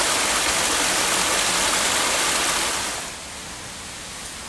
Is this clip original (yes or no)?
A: yes